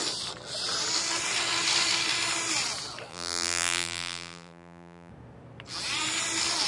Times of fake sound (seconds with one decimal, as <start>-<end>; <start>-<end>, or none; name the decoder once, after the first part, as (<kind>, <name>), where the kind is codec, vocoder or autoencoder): 3.1-5.1 (vocoder, BigVGAN v2)